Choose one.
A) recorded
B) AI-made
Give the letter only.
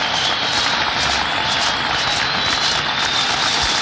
A